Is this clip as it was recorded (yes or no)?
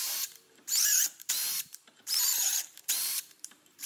no